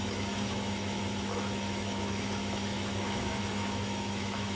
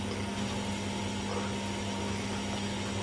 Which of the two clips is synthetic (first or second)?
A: first